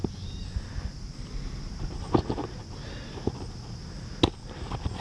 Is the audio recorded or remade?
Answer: recorded